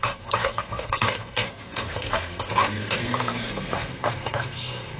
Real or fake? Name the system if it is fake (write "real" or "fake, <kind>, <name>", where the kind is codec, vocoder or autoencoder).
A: fake, codec, SNAC